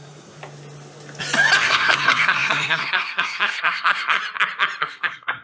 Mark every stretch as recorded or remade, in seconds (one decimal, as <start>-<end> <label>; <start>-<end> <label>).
0.0-0.4 remade; 0.4-1.6 recorded; 1.6-4.2 remade; 4.2-4.8 recorded; 4.8-5.4 remade